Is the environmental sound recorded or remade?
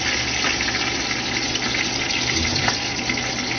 recorded